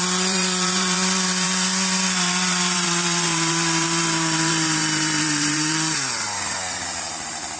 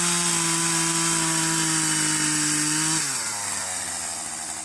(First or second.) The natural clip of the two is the second